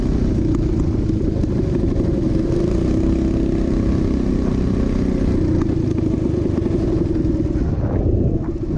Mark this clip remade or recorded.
recorded